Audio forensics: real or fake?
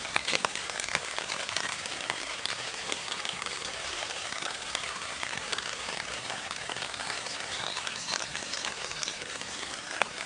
fake